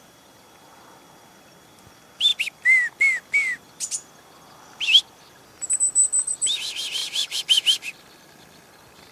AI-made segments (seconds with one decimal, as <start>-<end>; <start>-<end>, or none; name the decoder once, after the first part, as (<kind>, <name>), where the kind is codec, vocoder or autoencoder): none